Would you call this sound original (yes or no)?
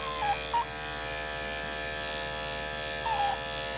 yes